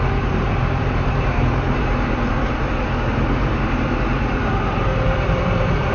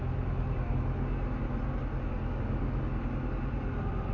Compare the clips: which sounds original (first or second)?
second